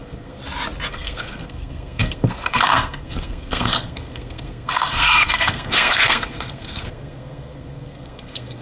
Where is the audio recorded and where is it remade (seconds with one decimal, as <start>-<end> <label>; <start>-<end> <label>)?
0.0-0.4 remade; 0.4-0.9 recorded; 0.9-8.6 remade